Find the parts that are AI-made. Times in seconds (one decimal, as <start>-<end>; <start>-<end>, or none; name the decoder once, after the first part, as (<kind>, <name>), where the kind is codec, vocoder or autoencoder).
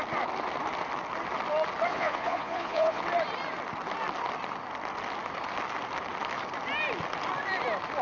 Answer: 1.9-3.0 (vocoder, Vocos)